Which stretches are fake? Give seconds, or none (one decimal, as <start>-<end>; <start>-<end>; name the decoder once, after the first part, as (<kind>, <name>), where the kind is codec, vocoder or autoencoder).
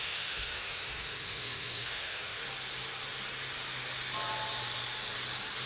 0.0-2.4 (autoencoder, DAC-VAE)